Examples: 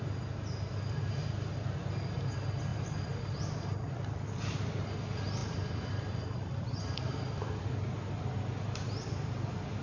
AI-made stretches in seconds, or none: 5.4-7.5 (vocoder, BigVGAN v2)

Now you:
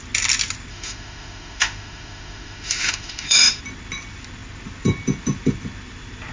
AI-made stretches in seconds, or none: 0.7-3.6 (autoencoder, DAC-VAE)

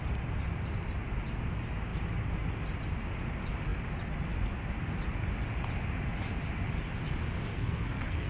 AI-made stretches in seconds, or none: 7.5-8.3 (codec, SNAC)

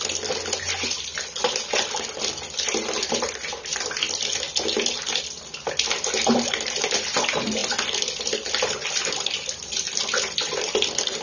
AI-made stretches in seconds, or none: 7.6-8.8 (vocoder, BigVGAN v2)

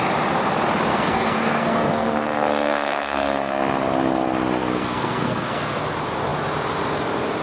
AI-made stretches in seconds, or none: 0.9-3.5 (codec, SNAC); 4.6-5.8

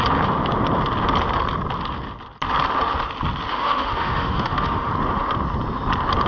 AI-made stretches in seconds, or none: 3.5-4.9 (autoencoder, DAC-VAE)